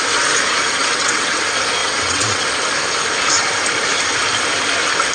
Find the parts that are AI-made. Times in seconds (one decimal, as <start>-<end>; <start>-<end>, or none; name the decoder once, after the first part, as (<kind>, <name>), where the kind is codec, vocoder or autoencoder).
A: 0.8-1.4 (vocoder, WaveNeXt); 1.8-2.4